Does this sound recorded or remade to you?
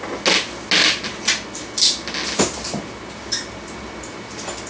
recorded